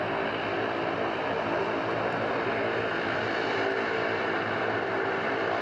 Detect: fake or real real